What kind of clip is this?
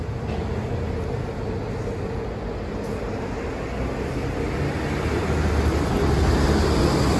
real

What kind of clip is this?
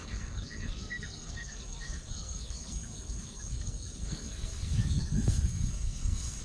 fake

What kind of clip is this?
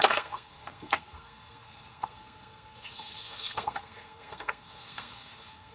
fake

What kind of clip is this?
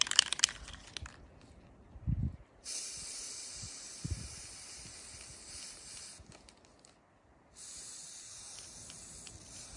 real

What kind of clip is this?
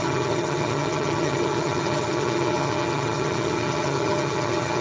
fake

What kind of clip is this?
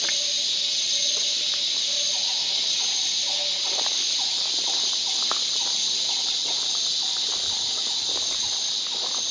real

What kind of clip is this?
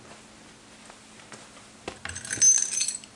real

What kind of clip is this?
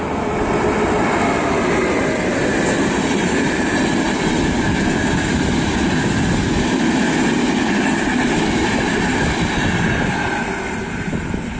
real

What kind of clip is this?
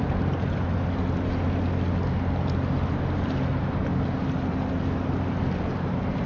real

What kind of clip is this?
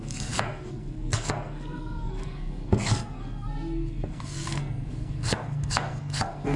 fake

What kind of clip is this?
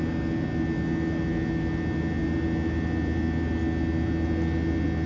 real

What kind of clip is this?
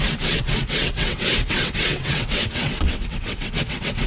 fake